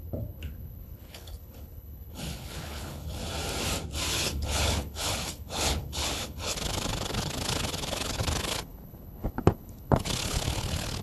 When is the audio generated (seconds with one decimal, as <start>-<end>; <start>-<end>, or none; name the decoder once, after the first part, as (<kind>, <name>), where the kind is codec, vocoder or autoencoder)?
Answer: 0.0-3.2 (codec, HILCodec); 4.1-11.0

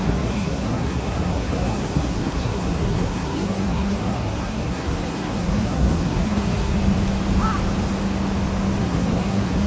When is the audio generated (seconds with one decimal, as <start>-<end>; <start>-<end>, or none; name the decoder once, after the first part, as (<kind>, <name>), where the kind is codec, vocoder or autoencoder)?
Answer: 0.0-6.8 (codec, SNAC); 8.8-9.7

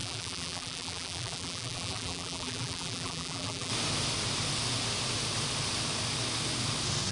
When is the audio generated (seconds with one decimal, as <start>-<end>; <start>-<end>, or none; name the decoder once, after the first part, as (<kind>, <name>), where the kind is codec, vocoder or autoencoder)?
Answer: 0.0-3.7 (vocoder, BigVGAN v2)

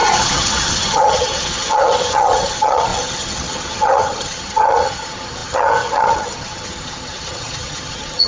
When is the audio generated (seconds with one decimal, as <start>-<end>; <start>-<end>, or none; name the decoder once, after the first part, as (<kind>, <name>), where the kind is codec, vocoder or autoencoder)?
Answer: 0.0-8.3 (vocoder, HiFi-GAN)

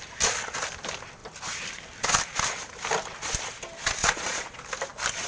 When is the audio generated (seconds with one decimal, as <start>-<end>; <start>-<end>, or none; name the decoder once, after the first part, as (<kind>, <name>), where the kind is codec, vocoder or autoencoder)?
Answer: 4.0-4.6 (vocoder, Vocos)

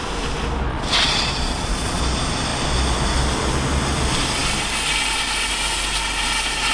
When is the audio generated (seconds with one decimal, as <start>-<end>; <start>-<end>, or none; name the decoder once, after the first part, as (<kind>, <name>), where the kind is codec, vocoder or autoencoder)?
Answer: 0.7-2.0 (vocoder, Vocos)